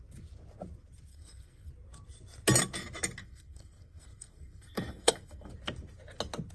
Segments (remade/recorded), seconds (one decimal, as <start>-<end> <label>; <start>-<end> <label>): 0.0-1.1 recorded; 1.1-1.7 remade; 1.7-3.2 recorded; 3.2-5.5 remade; 5.5-6.5 recorded